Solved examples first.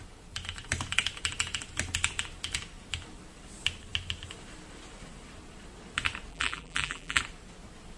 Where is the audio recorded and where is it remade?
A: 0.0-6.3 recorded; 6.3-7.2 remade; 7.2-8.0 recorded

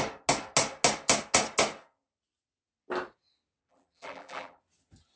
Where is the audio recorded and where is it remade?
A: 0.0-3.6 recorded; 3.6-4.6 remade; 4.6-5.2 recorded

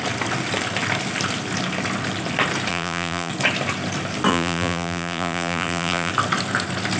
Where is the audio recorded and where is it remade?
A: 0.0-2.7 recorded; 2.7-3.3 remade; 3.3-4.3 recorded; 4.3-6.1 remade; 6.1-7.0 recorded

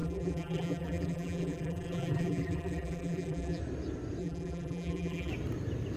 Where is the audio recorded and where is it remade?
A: 0.0-3.6 remade; 3.6-4.2 recorded; 4.2-5.3 remade; 5.3-6.0 recorded